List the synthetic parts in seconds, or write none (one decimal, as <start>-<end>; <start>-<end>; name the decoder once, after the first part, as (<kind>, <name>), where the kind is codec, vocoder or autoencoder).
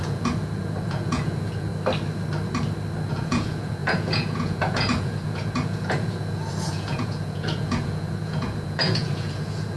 0.0-1.7 (vocoder, Vocos); 3.1-9.8